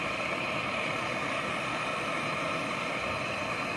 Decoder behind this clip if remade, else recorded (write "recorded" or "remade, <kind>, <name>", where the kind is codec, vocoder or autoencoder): recorded